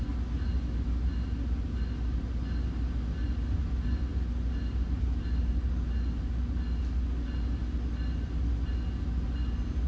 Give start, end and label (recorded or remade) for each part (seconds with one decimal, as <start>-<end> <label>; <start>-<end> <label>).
0.0-9.9 recorded